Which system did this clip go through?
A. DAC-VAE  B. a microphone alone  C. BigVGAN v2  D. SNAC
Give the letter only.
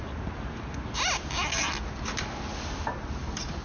B